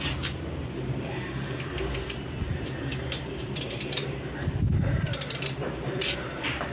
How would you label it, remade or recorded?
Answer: remade